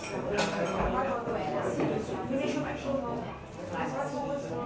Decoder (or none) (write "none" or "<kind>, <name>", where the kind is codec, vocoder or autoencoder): none